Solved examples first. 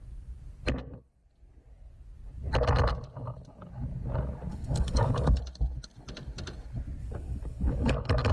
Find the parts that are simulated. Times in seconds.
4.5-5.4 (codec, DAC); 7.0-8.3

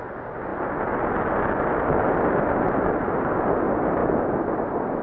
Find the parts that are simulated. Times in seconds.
none

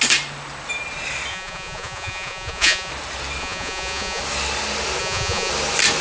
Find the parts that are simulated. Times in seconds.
1.3-2.9 (vocoder, Vocos); 3.4-4.2; 5.0-5.5

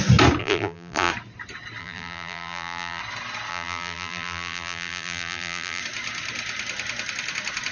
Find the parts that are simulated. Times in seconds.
0.4-1.1 (vocoder, BigVGAN v2); 1.8-3.0; 3.5-5.8